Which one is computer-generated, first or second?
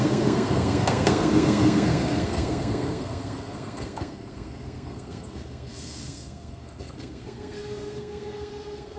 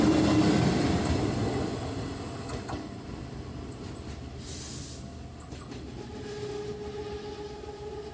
first